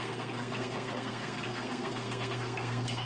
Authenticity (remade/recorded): remade